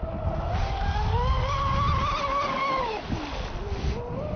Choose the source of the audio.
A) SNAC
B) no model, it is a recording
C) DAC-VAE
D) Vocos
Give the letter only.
B